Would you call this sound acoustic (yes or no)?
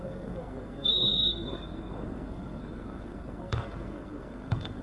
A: no